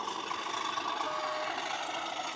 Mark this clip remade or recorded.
recorded